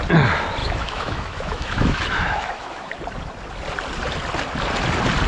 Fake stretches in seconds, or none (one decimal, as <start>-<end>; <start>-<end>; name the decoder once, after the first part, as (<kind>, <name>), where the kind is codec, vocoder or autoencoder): 0.6-2.9 (autoencoder, DAC-VAE)